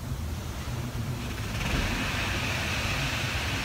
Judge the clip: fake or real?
real